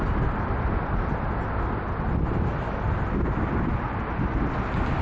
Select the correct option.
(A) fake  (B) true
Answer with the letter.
B